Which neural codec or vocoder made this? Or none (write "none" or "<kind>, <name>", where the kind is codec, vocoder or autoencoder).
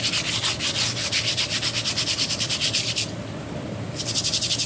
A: vocoder, BigVGAN v2